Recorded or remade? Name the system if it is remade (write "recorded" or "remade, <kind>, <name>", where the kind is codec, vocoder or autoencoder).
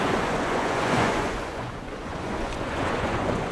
remade, vocoder, Vocos